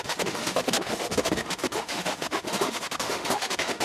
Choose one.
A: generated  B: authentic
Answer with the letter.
A